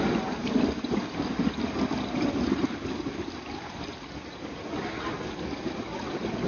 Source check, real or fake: real